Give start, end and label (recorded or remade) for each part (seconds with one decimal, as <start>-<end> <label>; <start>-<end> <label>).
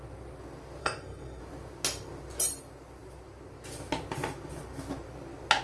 0.0-0.8 recorded; 0.8-1.4 remade; 1.4-5.6 recorded